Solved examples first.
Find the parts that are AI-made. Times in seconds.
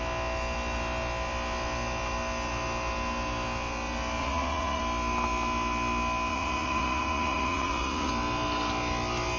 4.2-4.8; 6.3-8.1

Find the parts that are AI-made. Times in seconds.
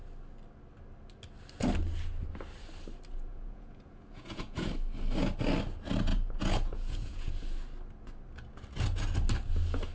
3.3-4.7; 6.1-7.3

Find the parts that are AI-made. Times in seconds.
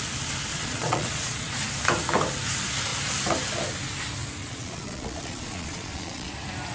0.5-1.5; 4.4-6.3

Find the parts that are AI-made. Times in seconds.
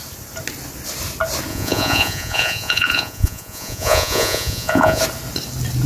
1.5-5.0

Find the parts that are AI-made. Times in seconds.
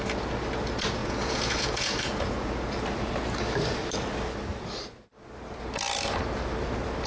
1.0-2.5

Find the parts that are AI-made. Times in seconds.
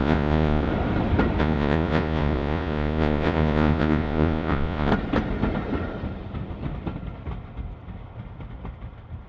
0.0-0.7; 1.4-4.9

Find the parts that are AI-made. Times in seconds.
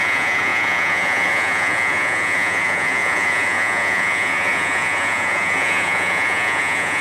0.0-7.0